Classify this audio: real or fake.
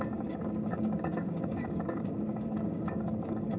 fake